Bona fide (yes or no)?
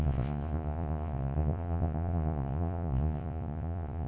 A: no